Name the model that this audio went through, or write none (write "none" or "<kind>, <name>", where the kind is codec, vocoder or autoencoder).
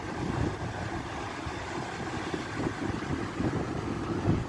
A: none